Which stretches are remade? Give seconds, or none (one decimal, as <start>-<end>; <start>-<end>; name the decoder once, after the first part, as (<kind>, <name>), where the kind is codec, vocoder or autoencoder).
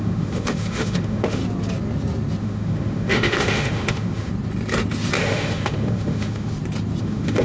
0.0-1.4 (autoencoder, DAC-VAE); 2.4-4.3; 5.2-6.5; 7.0-7.4